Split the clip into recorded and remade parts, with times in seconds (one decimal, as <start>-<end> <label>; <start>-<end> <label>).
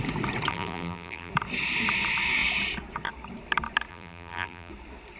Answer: 0.0-0.5 recorded; 0.5-1.3 remade; 1.3-3.9 recorded; 3.9-4.7 remade; 4.7-5.2 recorded